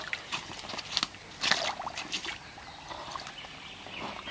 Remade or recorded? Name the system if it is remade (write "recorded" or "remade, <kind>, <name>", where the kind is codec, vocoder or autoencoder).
recorded